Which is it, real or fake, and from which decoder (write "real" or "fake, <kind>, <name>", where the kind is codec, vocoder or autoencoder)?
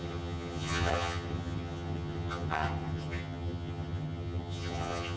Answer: fake, vocoder, HiFi-GAN